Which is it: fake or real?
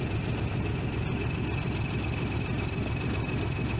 real